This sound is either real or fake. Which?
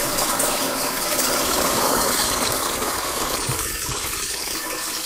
fake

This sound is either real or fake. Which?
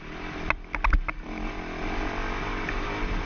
real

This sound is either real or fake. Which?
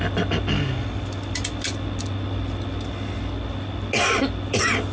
real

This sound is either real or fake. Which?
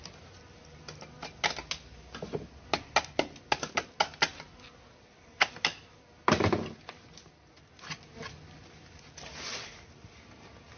real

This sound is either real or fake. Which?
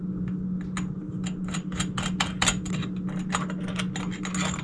real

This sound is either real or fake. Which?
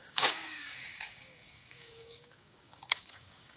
fake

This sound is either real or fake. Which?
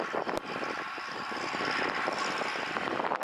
real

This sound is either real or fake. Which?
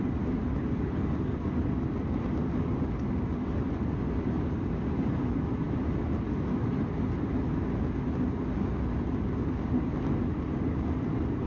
real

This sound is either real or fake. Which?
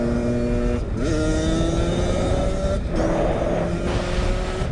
real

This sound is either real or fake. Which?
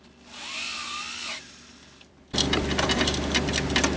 fake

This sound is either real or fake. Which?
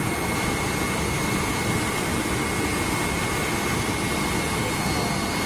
real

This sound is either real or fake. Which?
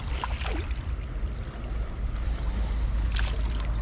real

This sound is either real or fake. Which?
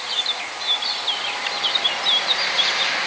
real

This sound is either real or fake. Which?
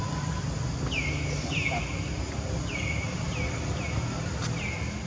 real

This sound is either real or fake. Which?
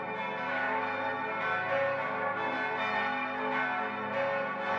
real